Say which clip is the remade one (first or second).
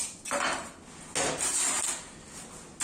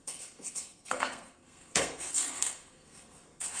second